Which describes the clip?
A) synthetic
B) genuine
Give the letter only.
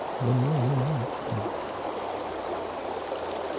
B